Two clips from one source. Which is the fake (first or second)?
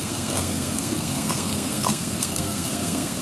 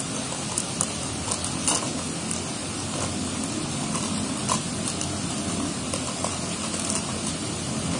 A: first